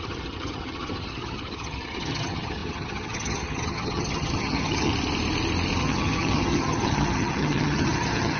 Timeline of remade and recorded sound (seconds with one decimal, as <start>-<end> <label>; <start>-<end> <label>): 0.0-4.9 remade; 4.9-5.8 recorded; 5.8-8.4 remade